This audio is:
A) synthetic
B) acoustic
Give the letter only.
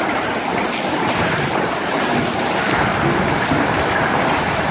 B